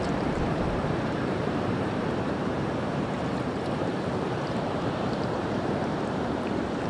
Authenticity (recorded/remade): remade